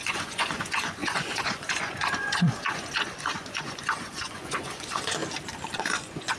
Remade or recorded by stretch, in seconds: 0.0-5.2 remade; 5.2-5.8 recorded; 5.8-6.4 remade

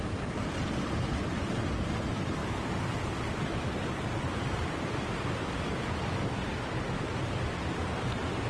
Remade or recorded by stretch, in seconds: 0.0-8.5 recorded

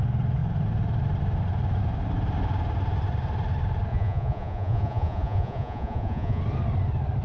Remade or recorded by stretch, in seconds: 0.0-3.9 recorded; 3.9-6.4 remade; 6.4-7.2 recorded

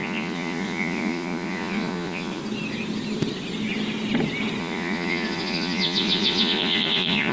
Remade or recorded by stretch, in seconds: 0.0-2.4 remade; 2.4-4.6 recorded; 4.6-7.3 remade